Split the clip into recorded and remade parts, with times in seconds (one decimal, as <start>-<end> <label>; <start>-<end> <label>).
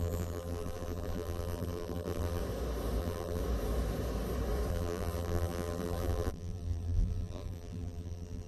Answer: 0.0-2.4 remade; 2.4-3.0 recorded; 3.0-3.4 remade; 3.4-4.7 recorded; 4.7-8.5 remade